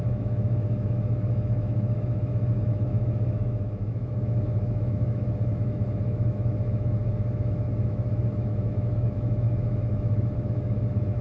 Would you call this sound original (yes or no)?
no